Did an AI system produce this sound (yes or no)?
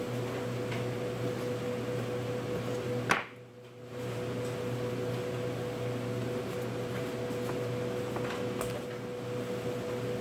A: no